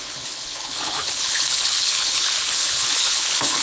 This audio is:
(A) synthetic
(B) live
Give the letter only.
A